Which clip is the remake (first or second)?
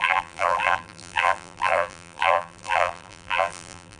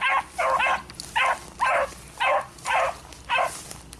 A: first